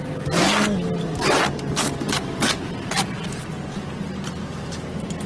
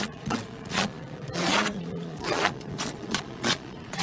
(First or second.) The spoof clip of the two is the second